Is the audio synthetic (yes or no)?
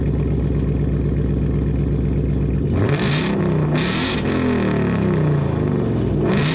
no